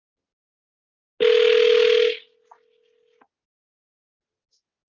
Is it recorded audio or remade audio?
recorded